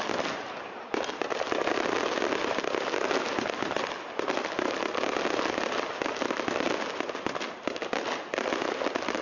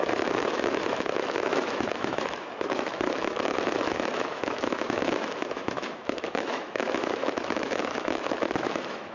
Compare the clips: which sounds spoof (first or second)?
second